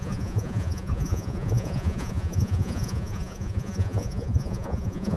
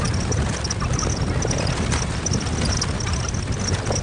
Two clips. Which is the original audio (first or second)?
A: second